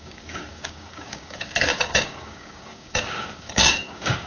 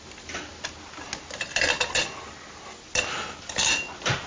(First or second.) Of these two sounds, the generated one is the first